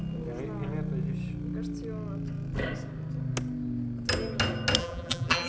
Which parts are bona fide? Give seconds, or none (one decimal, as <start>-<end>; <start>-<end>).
0.0-4.8